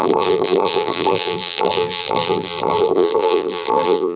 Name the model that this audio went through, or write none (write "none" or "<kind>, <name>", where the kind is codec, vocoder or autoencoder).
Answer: vocoder, BigVGAN v2